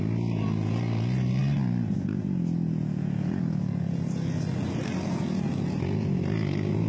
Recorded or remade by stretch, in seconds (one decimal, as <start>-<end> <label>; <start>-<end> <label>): 0.0-6.9 recorded